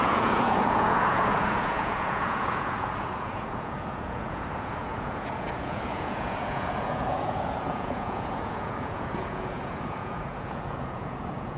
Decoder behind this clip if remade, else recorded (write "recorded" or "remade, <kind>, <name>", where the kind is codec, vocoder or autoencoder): remade, vocoder, Vocos